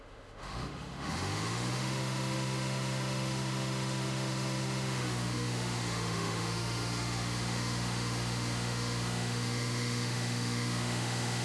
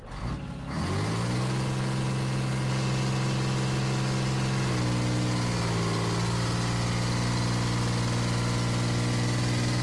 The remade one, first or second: first